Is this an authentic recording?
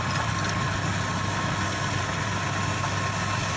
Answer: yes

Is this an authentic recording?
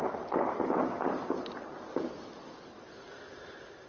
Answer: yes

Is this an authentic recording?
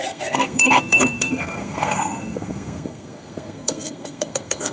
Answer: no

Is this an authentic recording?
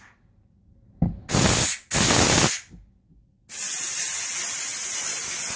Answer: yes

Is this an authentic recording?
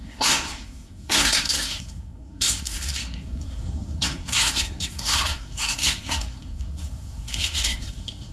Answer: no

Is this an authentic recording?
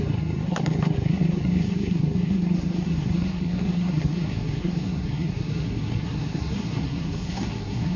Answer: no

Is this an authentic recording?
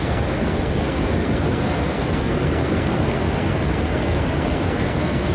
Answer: no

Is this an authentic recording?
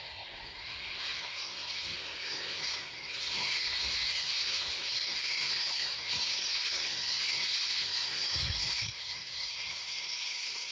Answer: no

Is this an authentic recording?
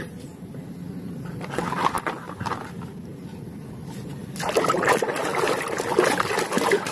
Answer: yes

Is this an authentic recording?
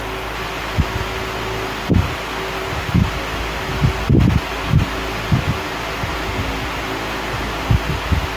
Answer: yes